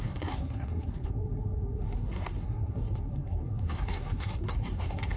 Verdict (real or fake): fake